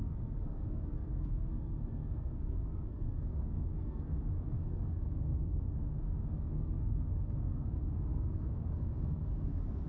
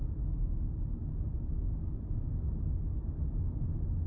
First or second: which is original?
second